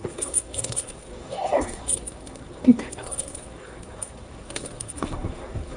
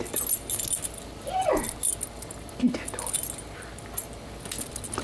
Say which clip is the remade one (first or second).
first